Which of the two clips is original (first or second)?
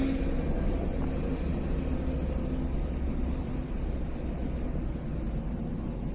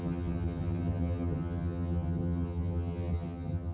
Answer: first